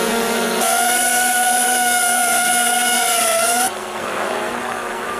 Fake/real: fake